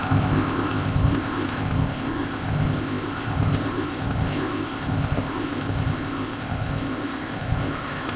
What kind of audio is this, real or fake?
fake